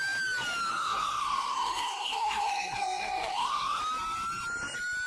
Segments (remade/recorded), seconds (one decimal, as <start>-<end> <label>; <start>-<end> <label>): 0.0-0.7 recorded; 0.7-3.8 remade; 3.8-5.1 recorded